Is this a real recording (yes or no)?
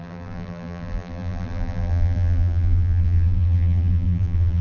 no